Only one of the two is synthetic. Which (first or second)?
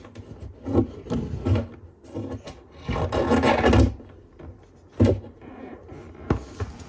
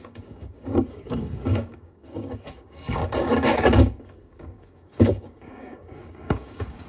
second